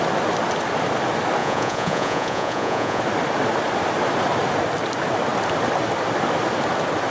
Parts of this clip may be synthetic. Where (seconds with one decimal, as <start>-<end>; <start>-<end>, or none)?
1.4-3.0